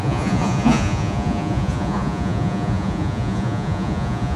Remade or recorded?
remade